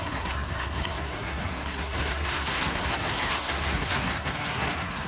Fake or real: fake